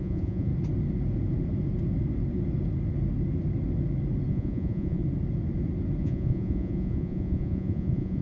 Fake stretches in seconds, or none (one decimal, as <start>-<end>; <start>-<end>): 0.0-0.5; 4.3-5.0; 6.0-8.2

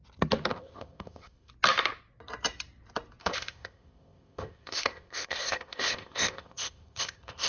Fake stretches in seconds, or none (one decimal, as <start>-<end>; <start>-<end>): 0.5-1.5; 3.2-7.5

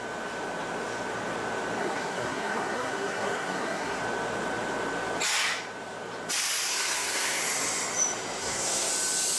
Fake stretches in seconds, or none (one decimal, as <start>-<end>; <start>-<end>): 1.8-4.0; 6.7-7.4; 8.4-8.9